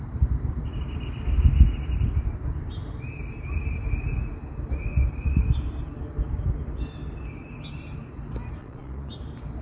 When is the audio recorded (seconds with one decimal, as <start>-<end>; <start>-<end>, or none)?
0.0-8.6; 9.1-9.6

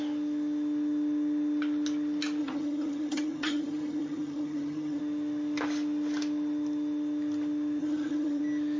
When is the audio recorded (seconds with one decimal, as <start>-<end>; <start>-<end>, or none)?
0.0-2.4; 5.0-7.8; 8.4-8.8

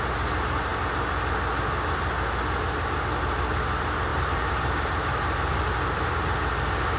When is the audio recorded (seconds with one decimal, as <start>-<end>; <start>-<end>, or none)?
0.0-4.1; 5.6-7.0

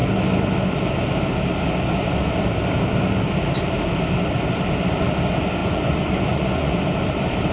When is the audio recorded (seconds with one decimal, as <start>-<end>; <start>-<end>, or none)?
0.0-5.6; 6.7-7.5

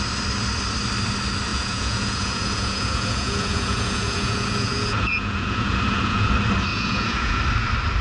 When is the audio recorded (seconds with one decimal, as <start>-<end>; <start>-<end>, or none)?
0.0-1.5; 6.3-6.7; 7.4-8.0

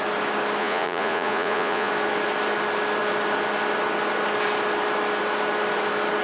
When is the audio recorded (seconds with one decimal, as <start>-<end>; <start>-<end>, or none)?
0.0-0.6; 1.9-6.2

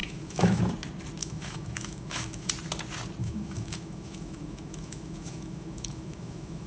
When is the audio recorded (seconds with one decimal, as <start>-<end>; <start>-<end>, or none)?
0.6-1.2; 2.5-3.2